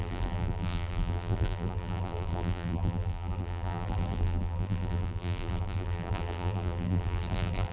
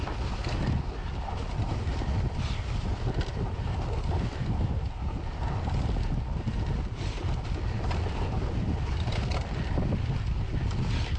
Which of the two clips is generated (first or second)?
first